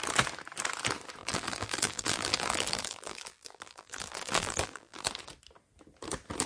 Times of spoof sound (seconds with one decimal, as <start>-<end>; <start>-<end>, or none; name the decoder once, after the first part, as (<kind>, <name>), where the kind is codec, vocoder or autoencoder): 1.2-5.1 (vocoder, BigVGAN v2)